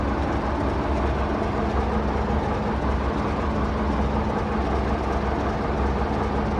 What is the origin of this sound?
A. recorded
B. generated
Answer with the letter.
A